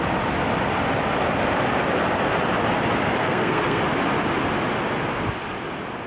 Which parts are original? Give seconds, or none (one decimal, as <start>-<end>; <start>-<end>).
0.0-3.2; 3.8-6.1